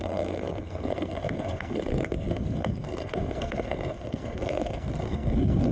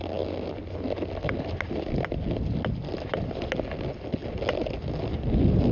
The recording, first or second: second